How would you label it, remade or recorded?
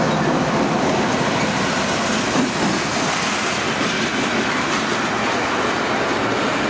recorded